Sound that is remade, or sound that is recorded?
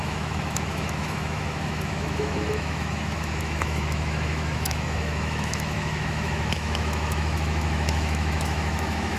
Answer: remade